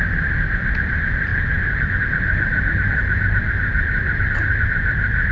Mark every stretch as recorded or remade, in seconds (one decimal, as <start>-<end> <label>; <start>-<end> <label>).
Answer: 0.0-5.3 recorded